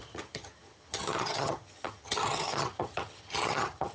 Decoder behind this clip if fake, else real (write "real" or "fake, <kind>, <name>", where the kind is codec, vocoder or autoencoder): fake, vocoder, HiFi-GAN